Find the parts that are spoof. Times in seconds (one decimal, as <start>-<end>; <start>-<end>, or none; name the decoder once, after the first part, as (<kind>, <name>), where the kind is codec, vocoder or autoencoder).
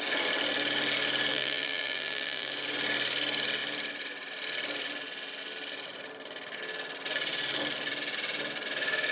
1.3-2.5 (vocoder, BigVGAN v2)